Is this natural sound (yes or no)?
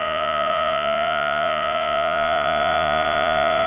no